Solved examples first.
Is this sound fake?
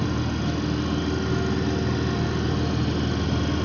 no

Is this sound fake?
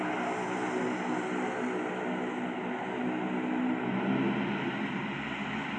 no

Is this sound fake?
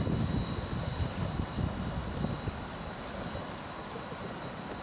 no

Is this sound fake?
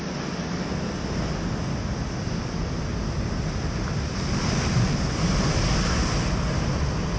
no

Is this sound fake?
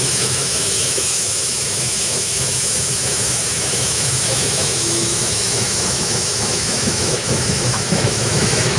yes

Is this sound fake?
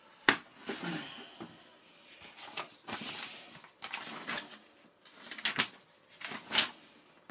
no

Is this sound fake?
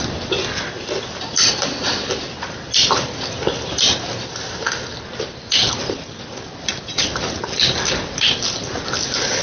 no